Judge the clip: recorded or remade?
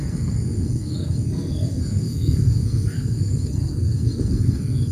remade